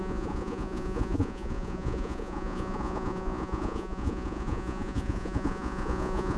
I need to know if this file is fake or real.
fake